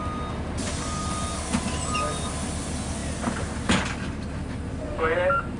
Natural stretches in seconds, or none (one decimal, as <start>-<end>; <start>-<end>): 0.0-5.6